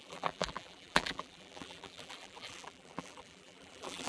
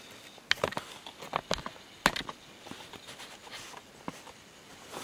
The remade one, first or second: first